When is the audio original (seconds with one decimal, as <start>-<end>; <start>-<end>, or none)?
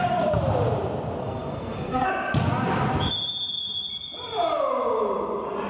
0.0-1.2; 2.1-5.7